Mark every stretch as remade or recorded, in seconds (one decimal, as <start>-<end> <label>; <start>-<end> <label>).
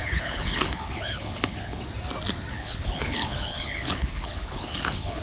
0.0-1.8 remade; 1.8-2.5 recorded; 2.5-5.2 remade